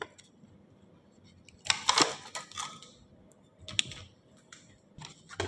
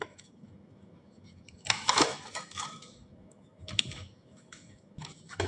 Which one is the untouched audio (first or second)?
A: first